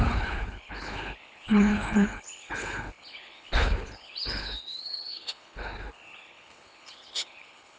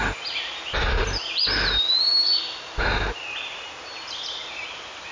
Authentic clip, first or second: second